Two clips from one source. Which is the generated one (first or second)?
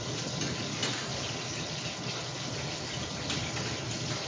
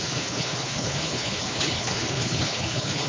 second